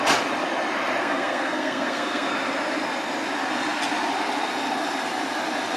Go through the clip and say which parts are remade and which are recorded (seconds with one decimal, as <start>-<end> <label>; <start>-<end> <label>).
0.0-1.0 recorded; 1.0-2.3 remade; 2.3-5.8 recorded